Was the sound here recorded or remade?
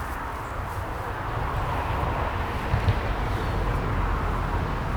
recorded